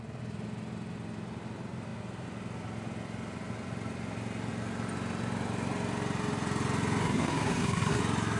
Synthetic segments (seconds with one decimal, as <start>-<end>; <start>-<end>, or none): 7.0-8.0